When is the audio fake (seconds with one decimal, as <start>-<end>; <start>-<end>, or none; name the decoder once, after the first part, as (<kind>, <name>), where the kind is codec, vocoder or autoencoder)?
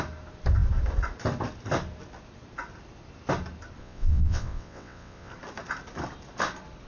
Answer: 3.8-5.3 (vocoder, WaveNeXt)